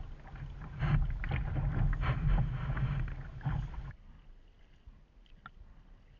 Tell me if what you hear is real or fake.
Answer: real